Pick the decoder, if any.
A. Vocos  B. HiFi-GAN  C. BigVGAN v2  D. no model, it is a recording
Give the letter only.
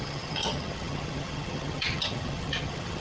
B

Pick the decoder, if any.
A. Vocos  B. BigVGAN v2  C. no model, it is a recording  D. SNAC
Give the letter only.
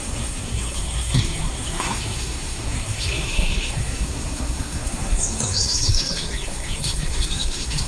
D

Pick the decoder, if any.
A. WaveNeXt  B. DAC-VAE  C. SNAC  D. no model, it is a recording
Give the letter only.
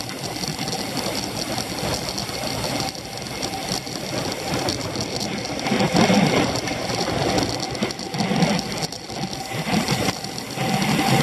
D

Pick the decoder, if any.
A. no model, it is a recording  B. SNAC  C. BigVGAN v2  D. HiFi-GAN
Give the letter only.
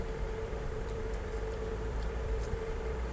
C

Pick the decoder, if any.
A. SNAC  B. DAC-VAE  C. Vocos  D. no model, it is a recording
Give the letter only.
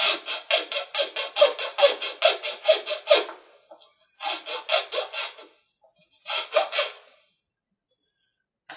D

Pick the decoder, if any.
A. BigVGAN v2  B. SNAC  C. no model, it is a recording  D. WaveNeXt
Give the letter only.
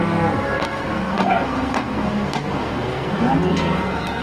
B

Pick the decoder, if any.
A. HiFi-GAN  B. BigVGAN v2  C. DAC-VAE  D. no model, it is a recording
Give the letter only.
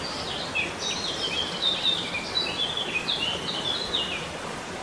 D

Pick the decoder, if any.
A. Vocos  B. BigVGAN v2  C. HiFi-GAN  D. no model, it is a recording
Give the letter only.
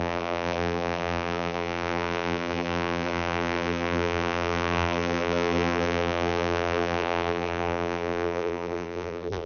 B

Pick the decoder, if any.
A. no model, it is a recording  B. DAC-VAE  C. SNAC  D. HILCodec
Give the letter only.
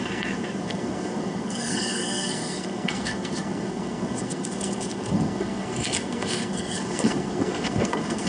C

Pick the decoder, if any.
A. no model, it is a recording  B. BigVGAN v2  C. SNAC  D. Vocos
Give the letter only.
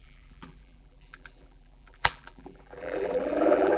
B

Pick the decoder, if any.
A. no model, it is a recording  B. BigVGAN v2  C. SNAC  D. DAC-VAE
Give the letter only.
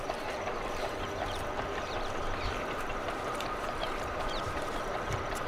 B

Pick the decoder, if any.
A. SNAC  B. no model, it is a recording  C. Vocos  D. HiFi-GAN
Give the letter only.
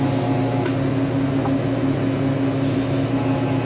B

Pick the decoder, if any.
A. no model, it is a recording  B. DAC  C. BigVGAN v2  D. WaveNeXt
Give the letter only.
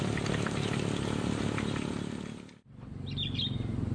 A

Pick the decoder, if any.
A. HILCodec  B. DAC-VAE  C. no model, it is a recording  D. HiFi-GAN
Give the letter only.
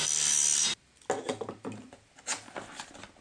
C